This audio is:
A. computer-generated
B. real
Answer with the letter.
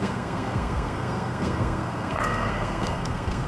A